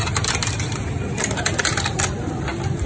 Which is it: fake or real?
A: fake